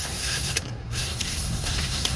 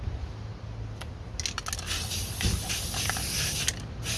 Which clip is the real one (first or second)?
second